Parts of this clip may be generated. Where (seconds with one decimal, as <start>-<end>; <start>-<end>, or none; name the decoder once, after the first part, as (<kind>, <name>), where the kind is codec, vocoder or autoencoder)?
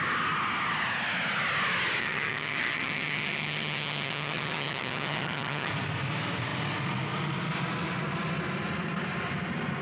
2.0-5.7 (vocoder, HiFi-GAN)